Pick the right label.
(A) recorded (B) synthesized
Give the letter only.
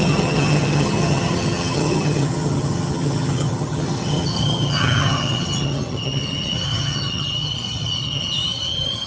B